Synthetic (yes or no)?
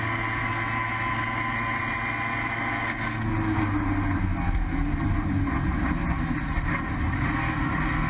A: no